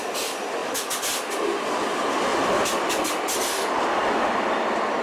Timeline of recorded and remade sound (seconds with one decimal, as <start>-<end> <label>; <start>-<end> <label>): 0.0-5.0 recorded